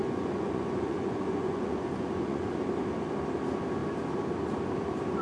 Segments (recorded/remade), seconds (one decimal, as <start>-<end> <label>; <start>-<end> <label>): 0.0-2.6 remade; 2.6-5.2 recorded